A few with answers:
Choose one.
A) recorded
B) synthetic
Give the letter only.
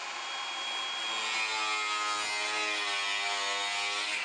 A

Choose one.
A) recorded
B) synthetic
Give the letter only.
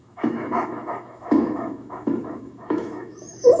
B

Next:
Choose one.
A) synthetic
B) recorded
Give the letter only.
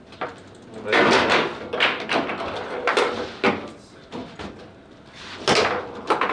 B